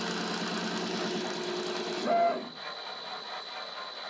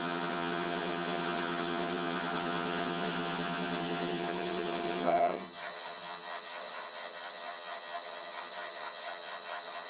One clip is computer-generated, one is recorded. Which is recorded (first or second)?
first